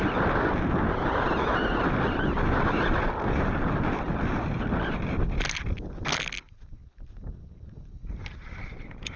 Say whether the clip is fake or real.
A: real